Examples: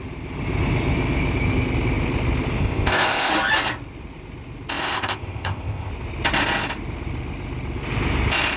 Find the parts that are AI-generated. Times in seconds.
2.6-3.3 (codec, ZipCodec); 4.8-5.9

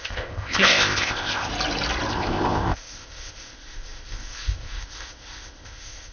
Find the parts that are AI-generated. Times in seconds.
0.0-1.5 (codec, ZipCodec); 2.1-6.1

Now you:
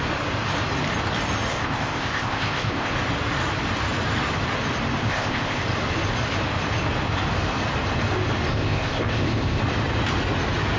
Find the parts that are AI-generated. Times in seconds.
1.5-2.9 (codec, ZipCodec); 5.0-5.6; 8.5-9.6